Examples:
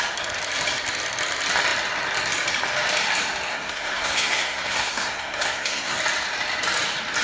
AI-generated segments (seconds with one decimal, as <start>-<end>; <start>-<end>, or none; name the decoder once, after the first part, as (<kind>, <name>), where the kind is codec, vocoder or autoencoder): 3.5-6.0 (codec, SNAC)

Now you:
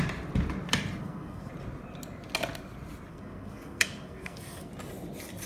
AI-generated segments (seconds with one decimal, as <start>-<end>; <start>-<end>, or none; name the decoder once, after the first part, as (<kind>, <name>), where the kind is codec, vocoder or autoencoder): 1.0-1.5 (codec, SNAC); 3.1-4.7

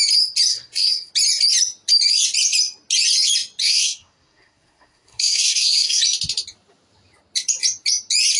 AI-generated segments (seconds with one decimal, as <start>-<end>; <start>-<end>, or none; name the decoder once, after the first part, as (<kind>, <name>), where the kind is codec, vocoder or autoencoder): 0.5-1.1 (codec, SNAC); 3.6-6.0